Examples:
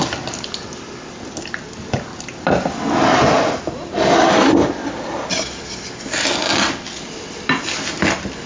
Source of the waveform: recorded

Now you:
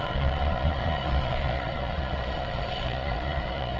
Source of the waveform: remade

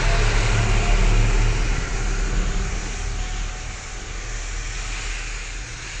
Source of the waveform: recorded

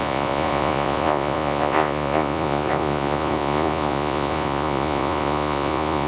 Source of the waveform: remade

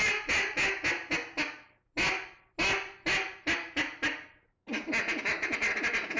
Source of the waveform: recorded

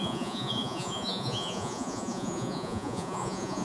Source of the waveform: remade